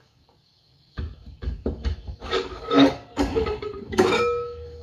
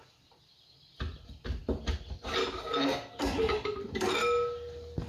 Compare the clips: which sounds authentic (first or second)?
second